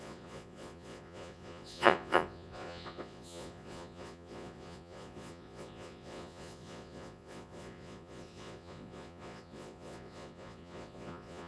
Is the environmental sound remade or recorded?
remade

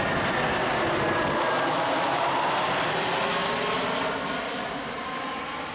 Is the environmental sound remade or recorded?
recorded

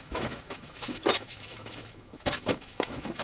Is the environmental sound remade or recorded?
remade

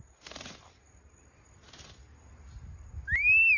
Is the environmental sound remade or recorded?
recorded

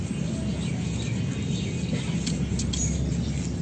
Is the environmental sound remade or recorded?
recorded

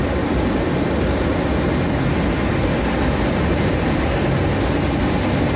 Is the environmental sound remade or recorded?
recorded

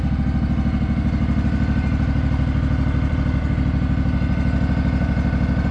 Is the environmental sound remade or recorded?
recorded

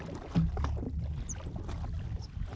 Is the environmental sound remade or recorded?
recorded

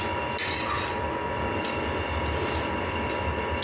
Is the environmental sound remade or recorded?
recorded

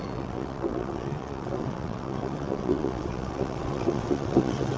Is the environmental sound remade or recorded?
remade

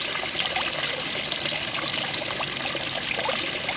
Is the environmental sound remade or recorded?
recorded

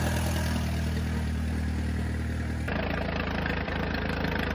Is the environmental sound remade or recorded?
recorded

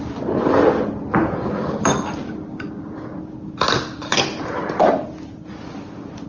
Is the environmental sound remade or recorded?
recorded